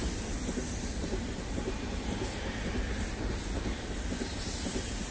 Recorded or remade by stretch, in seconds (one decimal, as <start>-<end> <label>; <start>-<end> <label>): 0.0-1.0 recorded; 1.0-2.2 remade; 2.2-5.1 recorded